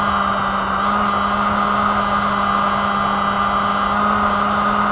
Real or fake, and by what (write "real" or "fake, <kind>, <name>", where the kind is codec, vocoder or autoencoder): real